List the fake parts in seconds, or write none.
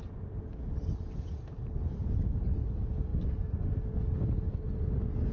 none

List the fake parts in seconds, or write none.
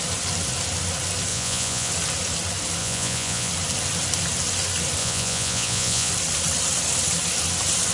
1.3-1.9 (vocoder, Vocos); 2.8-3.5; 5.0-6.1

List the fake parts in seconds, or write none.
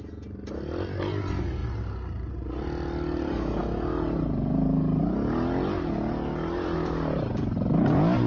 none